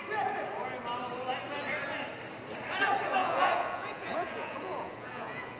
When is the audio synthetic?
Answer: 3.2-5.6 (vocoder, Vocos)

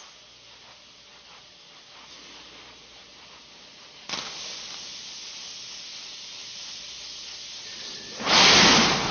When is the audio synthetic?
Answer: 6.4-9.1 (vocoder, BigVGAN v2)

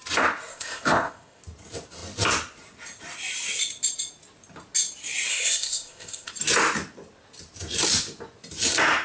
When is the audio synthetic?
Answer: 0.5-1.4 (codec, ZipCodec); 5.3-6.3

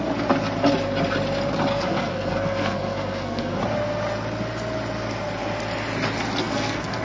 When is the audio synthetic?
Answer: 1.7-3.6 (codec, SNAC); 6.4-7.0

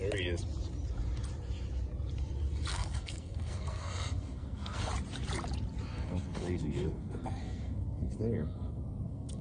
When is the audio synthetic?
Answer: 2.7-4.9 (codec, SNAC); 5.9-9.4

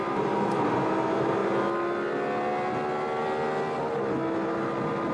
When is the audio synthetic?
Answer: none

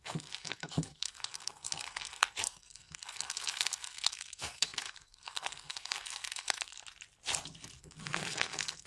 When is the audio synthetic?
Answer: 0.0-6.8 (codec, SNAC); 7.8-8.9